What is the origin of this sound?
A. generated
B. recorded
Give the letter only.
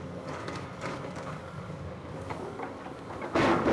A